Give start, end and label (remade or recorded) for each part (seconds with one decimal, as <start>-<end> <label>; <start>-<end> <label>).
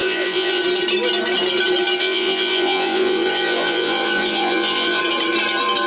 0.0-0.6 remade; 0.6-2.0 recorded; 2.0-5.0 remade; 5.0-5.9 recorded